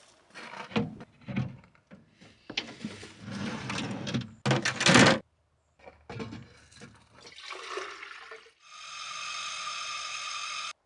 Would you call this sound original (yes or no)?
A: yes